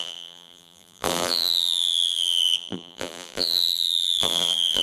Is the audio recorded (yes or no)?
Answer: no